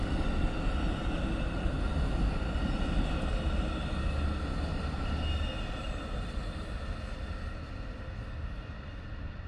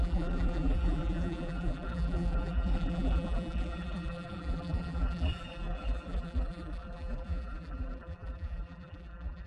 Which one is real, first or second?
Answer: first